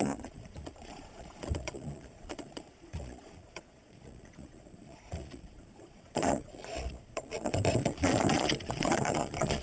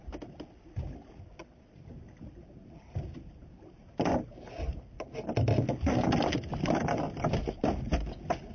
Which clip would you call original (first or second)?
second